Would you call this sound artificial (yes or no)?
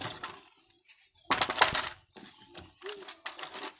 no